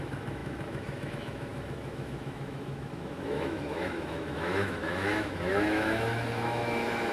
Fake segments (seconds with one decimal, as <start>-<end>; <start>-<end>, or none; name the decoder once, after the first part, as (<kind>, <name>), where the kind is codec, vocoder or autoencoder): 0.0-7.1 (autoencoder, DAC-VAE)